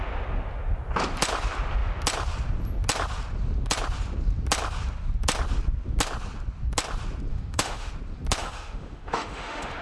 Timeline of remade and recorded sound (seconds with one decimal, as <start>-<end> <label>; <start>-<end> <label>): 0.0-7.3 recorded; 7.3-7.9 remade; 7.9-8.4 recorded; 8.4-9.8 remade